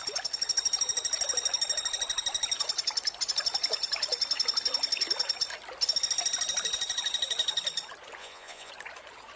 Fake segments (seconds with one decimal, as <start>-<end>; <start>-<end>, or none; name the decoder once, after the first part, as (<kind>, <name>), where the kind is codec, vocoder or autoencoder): 8.2-8.7 (vocoder, Vocos)